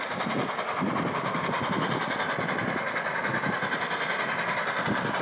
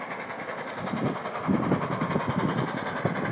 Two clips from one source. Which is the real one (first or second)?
second